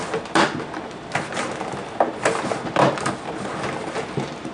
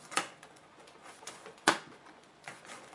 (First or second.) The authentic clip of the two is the first